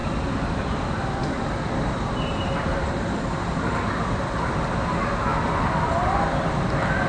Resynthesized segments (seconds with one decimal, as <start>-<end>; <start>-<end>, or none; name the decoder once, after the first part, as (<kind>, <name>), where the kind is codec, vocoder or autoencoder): 0.5-1.2 (vocoder, BigVGAN v2); 2.4-5.3